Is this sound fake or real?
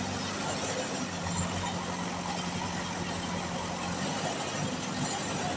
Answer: real